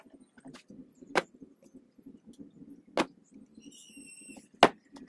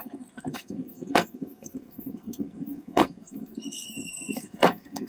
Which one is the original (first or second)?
first